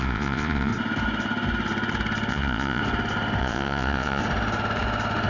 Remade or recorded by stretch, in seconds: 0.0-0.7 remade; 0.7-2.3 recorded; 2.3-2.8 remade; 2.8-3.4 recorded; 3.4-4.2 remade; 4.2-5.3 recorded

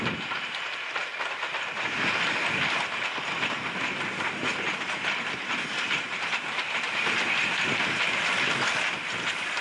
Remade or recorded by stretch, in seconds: 0.0-9.6 recorded

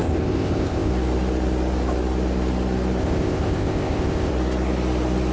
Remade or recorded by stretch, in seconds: 0.0-0.9 remade; 0.9-3.0 recorded; 3.0-4.3 remade; 4.3-5.3 recorded